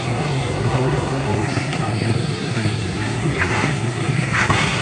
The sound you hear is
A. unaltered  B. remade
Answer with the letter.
B